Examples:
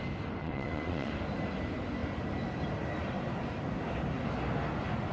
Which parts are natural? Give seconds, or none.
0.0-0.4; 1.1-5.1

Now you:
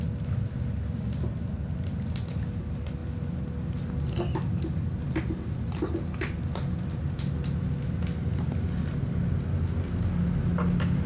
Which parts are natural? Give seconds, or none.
0.0-11.1

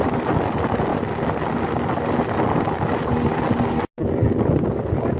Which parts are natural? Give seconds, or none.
0.0-5.2

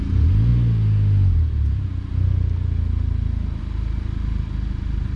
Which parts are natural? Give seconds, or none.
0.0-5.2

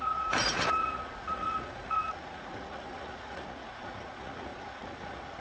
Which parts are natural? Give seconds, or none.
none

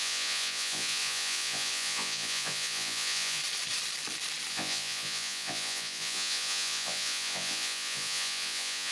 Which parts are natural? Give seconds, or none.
3.4-4.5

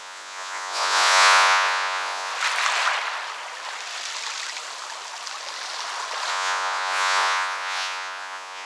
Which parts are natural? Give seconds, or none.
2.3-6.3

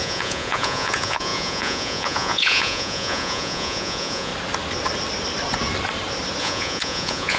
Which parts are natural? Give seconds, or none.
4.3-6.4